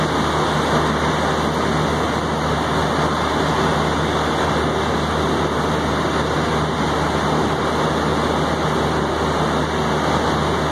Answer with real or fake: real